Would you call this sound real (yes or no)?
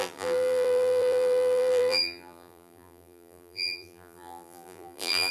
no